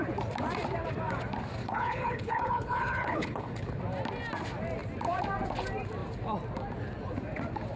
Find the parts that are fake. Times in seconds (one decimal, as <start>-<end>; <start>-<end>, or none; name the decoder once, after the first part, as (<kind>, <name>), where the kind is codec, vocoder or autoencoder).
1.6-3.8 (codec, HILCodec)